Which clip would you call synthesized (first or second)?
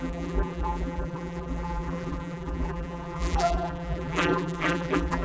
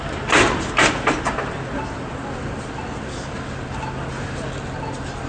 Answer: first